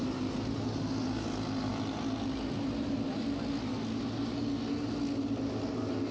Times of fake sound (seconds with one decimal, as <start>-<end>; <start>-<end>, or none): none